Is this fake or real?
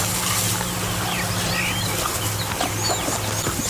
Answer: real